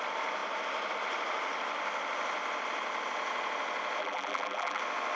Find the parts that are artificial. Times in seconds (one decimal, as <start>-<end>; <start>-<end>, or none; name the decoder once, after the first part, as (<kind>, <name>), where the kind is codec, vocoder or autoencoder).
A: 4.0-4.8 (vocoder, BigVGAN v2)